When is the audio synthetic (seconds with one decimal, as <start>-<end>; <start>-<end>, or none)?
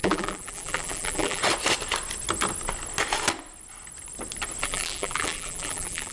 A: 0.0-1.4; 4.6-6.1